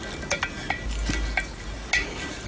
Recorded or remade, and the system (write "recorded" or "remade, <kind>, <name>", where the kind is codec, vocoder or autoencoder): recorded